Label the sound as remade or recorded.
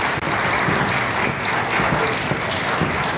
recorded